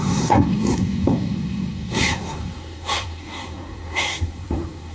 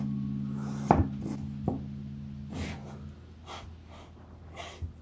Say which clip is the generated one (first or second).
first